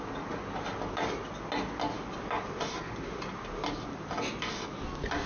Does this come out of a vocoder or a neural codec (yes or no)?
no